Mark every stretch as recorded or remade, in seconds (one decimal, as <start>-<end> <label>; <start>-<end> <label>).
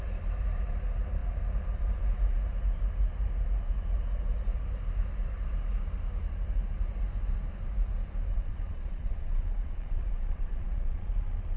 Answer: 0.0-8.3 recorded; 8.3-11.6 remade